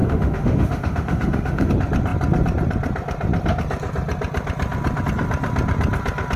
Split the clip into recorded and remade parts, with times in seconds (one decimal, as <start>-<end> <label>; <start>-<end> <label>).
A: 0.0-1.7 remade; 1.7-6.4 recorded